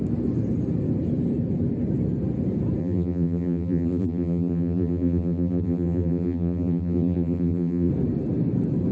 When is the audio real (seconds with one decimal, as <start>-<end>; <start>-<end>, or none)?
0.0-2.8; 7.9-8.9